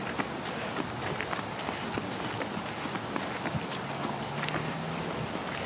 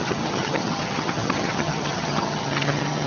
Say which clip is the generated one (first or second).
second